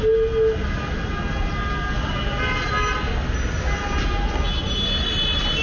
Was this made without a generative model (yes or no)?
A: yes